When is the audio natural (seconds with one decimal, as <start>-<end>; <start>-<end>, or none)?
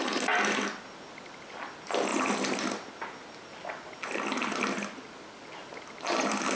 0.0-6.6